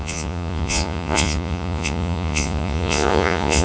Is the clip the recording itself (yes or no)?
no